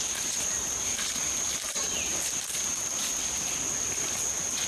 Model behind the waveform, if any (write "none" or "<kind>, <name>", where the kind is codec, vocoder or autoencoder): none